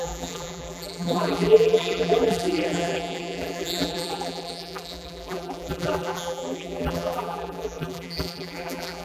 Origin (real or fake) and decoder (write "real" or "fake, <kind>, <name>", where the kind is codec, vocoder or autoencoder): fake, vocoder, BigVGAN v2